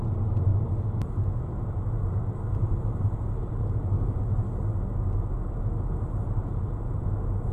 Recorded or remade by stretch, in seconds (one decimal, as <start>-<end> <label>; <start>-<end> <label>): 0.0-7.5 recorded